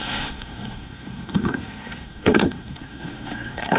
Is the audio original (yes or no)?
no